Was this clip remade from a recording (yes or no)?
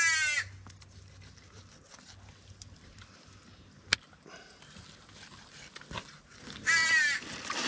no